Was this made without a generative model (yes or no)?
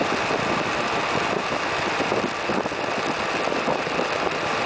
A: yes